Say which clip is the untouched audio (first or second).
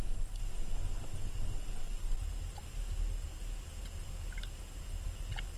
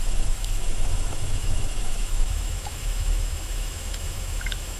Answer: first